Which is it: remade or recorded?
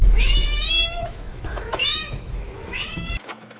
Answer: remade